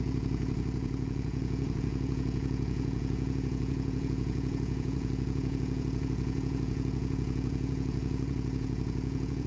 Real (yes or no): no